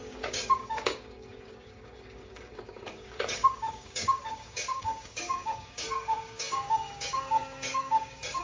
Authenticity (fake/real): fake